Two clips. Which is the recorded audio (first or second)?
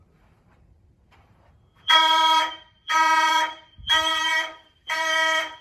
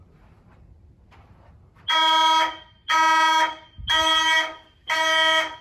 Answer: second